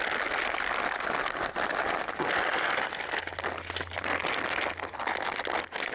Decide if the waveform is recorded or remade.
recorded